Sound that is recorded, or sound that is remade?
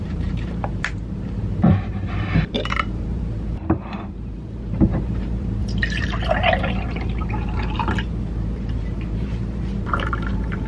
remade